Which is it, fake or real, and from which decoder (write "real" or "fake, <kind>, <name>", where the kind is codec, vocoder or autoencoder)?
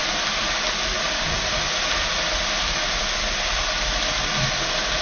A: real